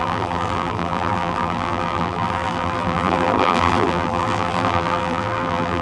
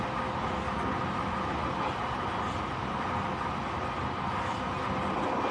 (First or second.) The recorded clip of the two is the second